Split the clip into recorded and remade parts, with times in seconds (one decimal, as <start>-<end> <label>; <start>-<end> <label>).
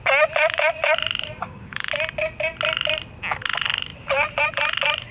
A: 0.0-1.4 recorded; 1.4-1.9 remade; 1.9-5.1 recorded